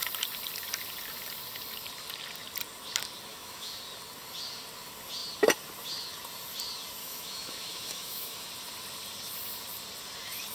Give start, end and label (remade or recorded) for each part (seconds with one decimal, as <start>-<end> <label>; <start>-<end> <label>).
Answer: 0.0-3.3 recorded; 3.3-3.8 remade; 3.8-7.0 recorded; 7.0-8.5 remade; 8.5-10.5 recorded